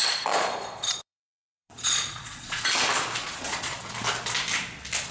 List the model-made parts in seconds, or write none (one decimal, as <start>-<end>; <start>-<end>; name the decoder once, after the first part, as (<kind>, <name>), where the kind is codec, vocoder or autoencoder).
0.0-2.7 (vocoder, Vocos); 3.2-3.9